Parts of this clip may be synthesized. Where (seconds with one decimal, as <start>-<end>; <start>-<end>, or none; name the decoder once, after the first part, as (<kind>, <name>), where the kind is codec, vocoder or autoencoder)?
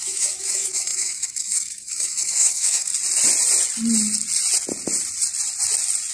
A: 0.0-2.9 (autoencoder, DAC-VAE)